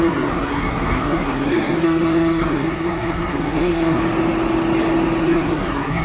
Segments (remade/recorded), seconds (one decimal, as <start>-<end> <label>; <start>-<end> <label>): 0.0-4.0 remade; 4.0-5.2 recorded; 5.2-6.0 remade